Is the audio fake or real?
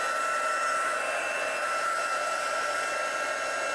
real